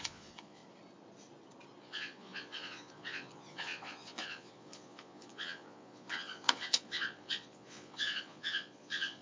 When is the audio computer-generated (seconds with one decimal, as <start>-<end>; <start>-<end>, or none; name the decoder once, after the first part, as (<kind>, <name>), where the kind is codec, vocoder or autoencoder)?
0.0-0.6 (vocoder, Vocos); 1.8-9.2